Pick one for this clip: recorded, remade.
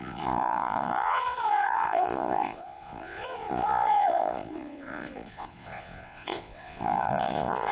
remade